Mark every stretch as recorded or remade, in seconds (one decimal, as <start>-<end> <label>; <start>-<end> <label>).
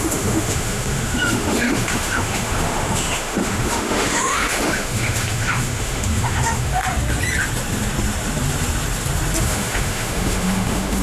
0.0-6.8 remade; 6.8-9.4 recorded; 9.4-11.0 remade